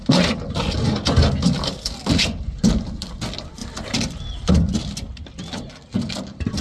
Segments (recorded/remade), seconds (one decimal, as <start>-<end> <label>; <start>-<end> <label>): 0.0-6.6 recorded